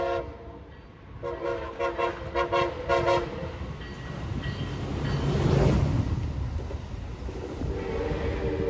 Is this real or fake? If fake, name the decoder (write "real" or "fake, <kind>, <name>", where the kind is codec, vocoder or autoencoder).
real